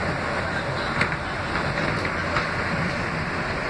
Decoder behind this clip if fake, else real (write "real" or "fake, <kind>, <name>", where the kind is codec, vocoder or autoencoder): real